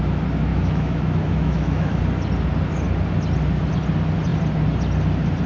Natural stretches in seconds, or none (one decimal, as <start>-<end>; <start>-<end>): 0.0-0.5; 2.0-5.5